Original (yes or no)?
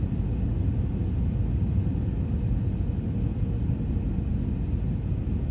yes